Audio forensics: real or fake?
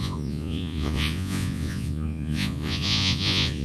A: fake